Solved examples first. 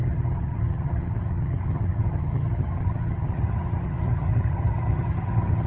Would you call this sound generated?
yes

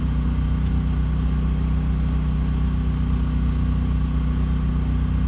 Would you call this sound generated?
no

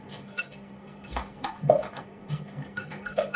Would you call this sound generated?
yes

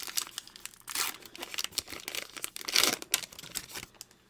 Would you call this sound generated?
no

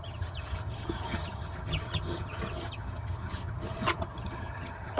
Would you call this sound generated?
yes